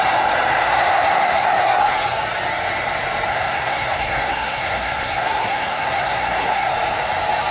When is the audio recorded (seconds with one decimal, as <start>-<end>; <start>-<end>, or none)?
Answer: 0.0-0.6; 1.8-3.3; 6.7-7.5